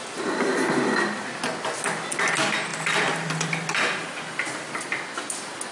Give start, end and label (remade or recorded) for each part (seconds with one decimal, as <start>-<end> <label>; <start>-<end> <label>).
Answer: 0.0-2.7 recorded; 2.7-5.0 remade; 5.0-5.7 recorded